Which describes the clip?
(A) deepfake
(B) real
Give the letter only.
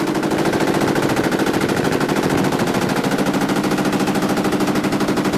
B